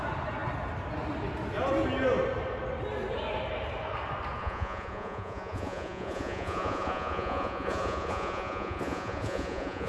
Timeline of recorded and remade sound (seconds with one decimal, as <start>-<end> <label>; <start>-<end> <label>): 0.0-4.4 recorded; 4.4-9.9 remade